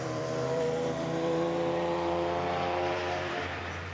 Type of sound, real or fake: fake